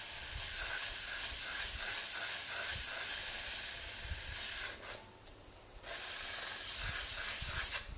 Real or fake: real